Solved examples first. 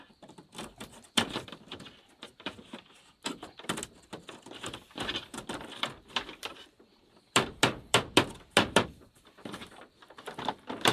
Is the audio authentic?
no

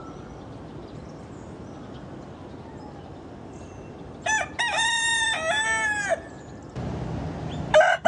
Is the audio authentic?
yes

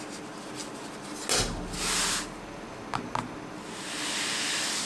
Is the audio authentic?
yes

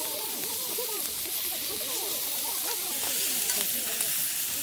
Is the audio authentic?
yes